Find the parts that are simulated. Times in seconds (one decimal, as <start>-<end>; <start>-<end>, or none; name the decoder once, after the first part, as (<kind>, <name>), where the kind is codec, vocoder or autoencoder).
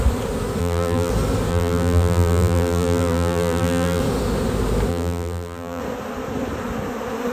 0.6-1.1 (vocoder, BigVGAN v2); 1.5-4.0; 4.9-5.8